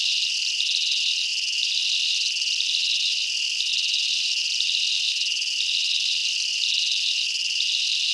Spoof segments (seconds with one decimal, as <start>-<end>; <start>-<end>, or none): none